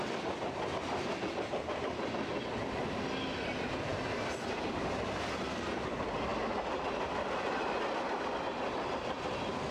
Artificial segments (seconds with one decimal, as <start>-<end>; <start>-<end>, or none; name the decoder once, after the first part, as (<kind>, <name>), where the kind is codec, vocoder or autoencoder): none